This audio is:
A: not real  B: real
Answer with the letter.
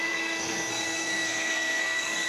A